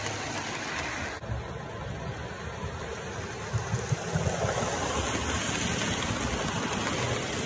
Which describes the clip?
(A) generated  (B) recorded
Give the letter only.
B